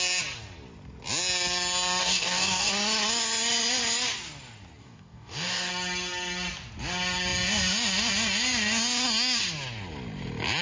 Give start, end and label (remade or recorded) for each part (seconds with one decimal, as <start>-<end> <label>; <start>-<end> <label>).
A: 0.0-2.0 recorded; 2.0-2.7 remade; 2.7-4.8 recorded; 4.8-5.7 remade; 5.7-10.6 recorded